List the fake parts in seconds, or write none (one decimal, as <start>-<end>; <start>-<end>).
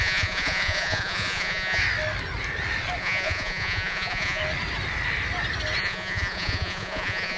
0.0-1.8; 3.0-4.4; 5.8-7.4